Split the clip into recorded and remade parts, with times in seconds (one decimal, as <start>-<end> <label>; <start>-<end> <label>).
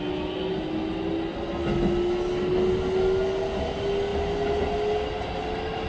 0.0-5.9 recorded